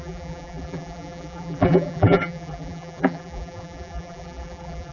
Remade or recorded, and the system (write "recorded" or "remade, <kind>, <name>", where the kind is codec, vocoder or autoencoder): remade, vocoder, BigVGAN v2